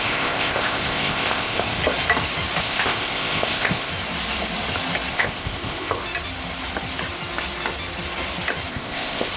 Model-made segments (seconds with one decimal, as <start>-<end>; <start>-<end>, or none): 0.0-1.8; 2.6-3.9; 5.1-6.0; 8.7-9.4